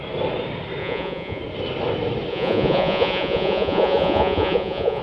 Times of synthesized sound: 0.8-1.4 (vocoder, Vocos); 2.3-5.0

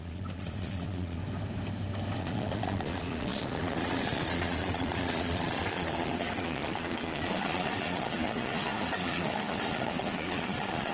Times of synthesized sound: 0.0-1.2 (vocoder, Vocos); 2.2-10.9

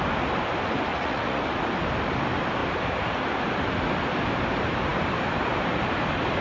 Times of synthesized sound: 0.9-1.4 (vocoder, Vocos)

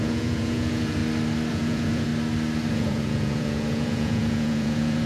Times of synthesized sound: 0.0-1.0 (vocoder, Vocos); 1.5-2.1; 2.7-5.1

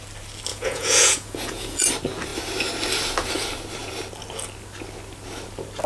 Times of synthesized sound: 0.5-1.8 (vocoder, Vocos)

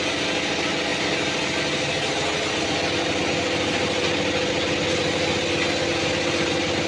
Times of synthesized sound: none

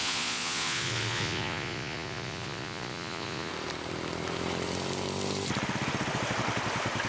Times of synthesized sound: 0.0-3.5 (vocoder, Vocos)

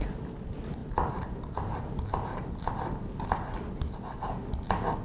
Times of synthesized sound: none